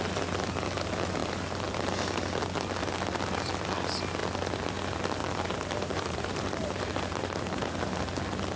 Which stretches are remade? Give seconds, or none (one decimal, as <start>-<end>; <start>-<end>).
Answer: 1.2-1.8; 5.2-8.0